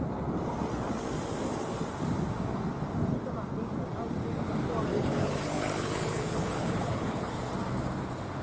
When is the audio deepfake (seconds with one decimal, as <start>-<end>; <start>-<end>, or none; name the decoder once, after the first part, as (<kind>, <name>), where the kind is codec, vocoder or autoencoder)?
4.9-7.4 (codec, HILCodec)